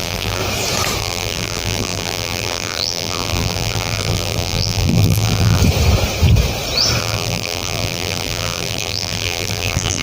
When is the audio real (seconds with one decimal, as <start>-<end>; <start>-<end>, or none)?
0.4-1.0; 5.6-7.0